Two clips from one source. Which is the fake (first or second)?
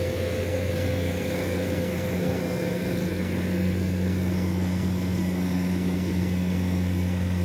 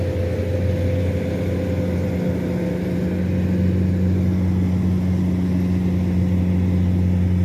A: first